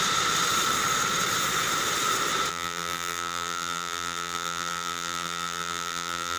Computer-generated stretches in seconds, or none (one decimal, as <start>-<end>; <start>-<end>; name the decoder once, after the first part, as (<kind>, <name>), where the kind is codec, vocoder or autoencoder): 2.5-6.4 (vocoder, BigVGAN v2)